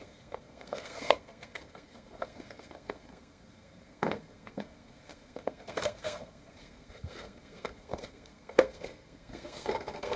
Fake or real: fake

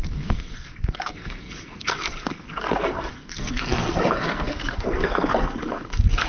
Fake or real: fake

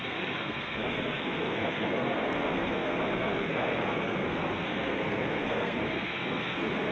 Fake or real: fake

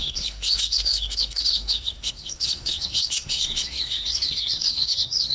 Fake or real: fake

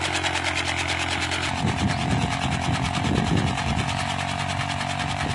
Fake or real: real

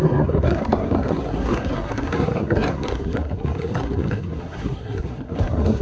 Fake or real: fake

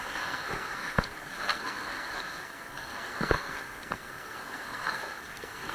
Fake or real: fake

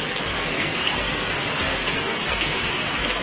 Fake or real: fake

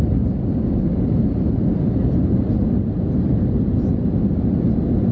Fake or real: real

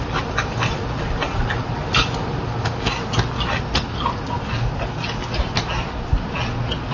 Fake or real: real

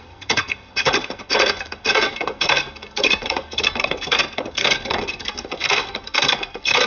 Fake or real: fake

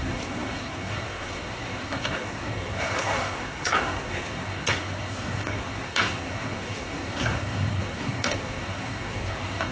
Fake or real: fake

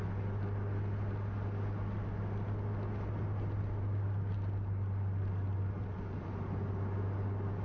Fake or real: real